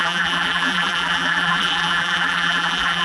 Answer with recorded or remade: remade